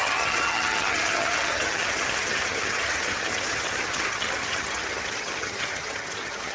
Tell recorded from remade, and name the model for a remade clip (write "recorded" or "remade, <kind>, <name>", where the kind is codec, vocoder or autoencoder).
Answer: remade, vocoder, HiFi-GAN